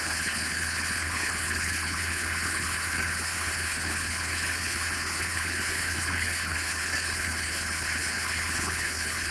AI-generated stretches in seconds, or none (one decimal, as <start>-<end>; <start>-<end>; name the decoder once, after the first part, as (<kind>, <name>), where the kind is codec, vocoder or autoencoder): 0.0-9.3 (codec, HILCodec)